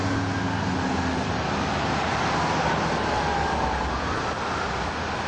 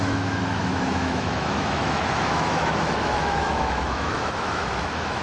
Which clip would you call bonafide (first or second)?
first